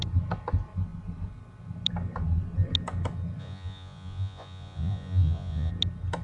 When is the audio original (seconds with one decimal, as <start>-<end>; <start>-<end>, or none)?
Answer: 0.0-3.4; 5.7-6.2